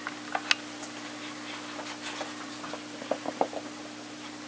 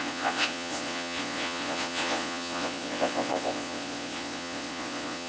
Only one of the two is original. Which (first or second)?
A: first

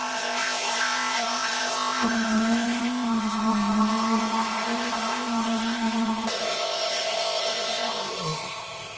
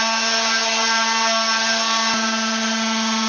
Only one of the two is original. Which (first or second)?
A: second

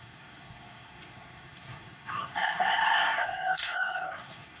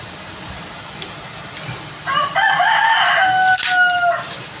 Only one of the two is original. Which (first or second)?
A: second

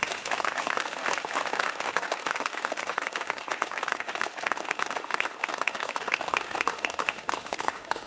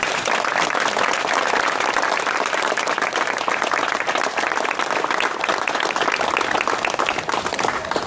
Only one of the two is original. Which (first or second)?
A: second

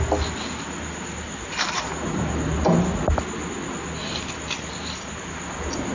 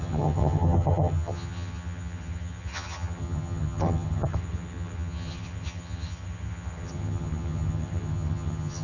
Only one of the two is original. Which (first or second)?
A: first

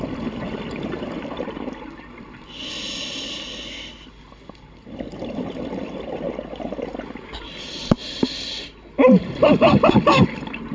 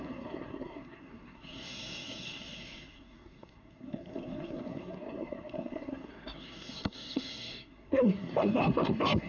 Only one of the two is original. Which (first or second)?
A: first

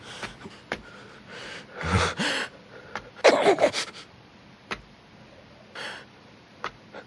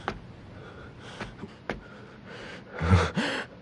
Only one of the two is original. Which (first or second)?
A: second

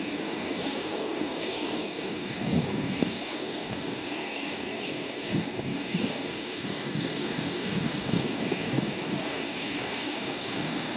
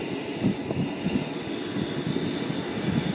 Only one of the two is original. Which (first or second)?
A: second